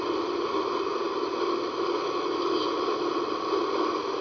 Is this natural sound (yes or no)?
yes